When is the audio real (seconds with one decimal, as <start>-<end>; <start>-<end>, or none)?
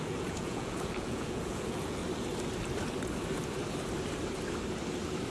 2.0-5.3